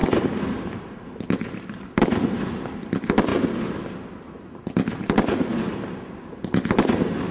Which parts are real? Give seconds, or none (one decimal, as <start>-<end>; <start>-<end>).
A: 0.0-7.3